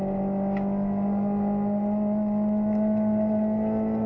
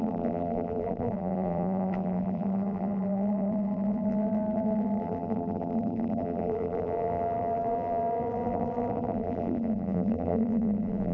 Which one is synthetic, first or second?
second